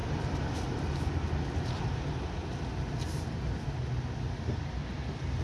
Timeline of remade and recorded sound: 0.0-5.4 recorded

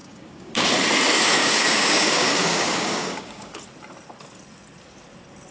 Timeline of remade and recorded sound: 0.0-0.7 remade; 0.7-1.4 recorded; 1.4-3.6 remade; 3.6-5.5 recorded

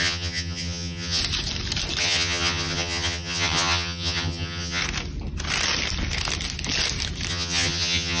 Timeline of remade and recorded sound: 0.0-1.2 remade; 1.2-2.0 recorded; 2.0-4.8 remade; 4.8-7.3 recorded; 7.3-8.2 remade

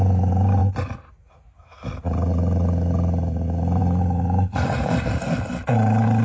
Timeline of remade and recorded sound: 0.0-6.2 recorded

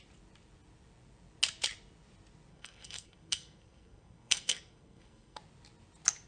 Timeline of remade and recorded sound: 0.0-2.5 recorded; 2.5-5.4 remade; 5.4-6.3 recorded

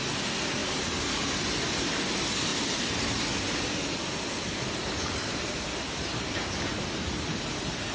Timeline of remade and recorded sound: 0.0-7.9 recorded